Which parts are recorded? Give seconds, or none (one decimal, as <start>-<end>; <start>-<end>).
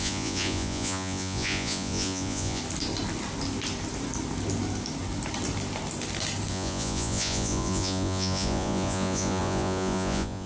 2.6-6.5